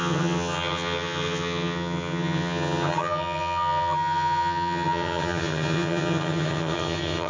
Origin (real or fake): fake